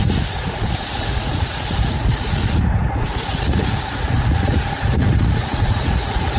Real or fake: fake